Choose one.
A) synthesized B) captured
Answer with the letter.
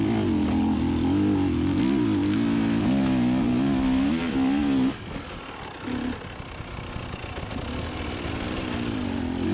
B